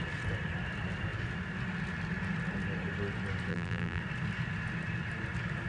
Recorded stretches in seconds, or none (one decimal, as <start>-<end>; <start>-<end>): 0.0-3.5; 4.0-5.7